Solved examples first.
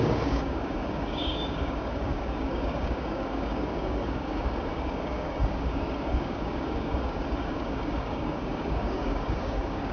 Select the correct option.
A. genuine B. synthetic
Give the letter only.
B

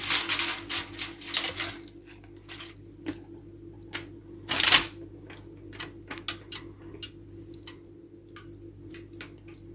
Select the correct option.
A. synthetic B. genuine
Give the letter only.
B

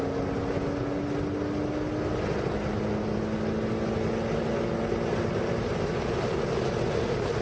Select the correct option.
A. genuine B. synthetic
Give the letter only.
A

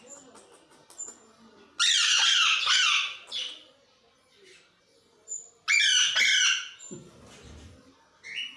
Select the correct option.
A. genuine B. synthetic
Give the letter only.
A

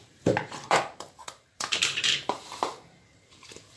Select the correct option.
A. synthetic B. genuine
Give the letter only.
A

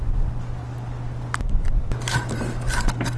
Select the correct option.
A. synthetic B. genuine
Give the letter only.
B